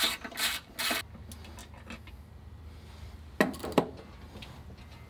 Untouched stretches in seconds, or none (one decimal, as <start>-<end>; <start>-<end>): 0.0-5.1